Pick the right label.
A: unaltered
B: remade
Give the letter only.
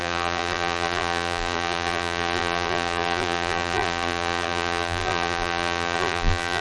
B